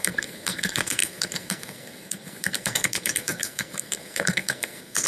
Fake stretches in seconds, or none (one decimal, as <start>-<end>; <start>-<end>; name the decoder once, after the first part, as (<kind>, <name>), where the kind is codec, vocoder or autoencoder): 0.0-5.1 (codec, SNAC)